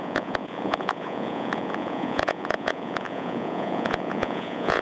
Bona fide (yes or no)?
no